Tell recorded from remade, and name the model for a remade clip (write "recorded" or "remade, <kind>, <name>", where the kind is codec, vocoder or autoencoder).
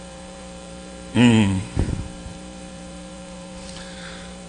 remade, vocoder, BigVGAN v2